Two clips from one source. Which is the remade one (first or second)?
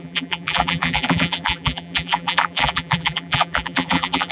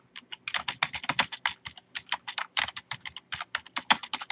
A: first